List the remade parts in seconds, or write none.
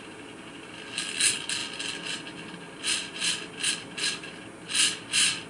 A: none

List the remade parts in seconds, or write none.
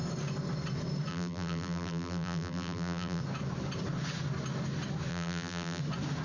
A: 1.1-3.2; 5.1-5.8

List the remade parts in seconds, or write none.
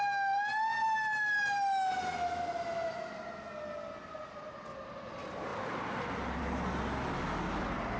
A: none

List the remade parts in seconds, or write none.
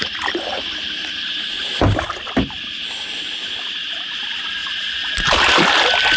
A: 0.0-3.4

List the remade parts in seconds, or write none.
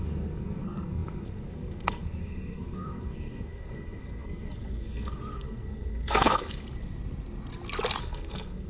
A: 0.0-6.6; 8.0-8.7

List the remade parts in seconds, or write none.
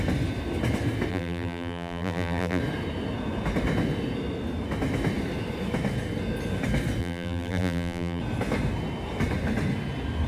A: 1.1-2.6; 7.0-8.2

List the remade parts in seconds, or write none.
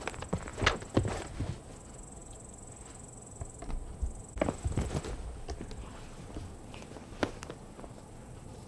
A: none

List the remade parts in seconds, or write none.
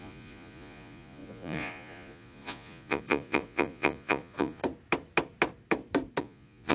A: 0.0-4.6; 6.2-6.7